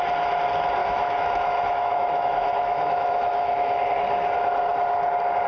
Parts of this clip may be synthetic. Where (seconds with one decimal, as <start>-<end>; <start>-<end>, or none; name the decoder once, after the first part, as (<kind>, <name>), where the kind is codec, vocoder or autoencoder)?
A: 0.8-3.9 (autoencoder, DAC-VAE)